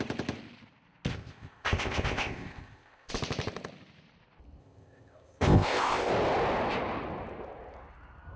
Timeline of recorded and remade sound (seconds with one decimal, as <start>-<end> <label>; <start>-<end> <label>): 0.0-1.1 recorded; 1.1-3.1 remade; 3.1-4.6 recorded; 4.6-6.1 remade; 6.1-8.4 recorded